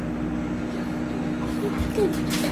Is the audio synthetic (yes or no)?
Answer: no